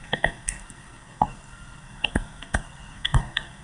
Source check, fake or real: fake